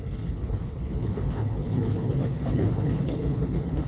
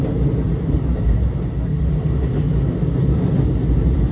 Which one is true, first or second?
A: second